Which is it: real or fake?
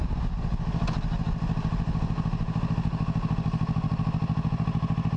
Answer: real